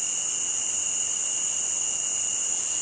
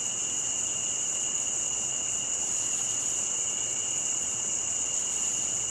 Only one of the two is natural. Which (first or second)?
first